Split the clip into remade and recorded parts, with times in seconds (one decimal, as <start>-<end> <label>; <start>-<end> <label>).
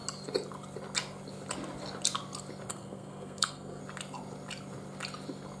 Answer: 0.0-2.7 recorded; 2.7-3.8 remade; 3.8-5.6 recorded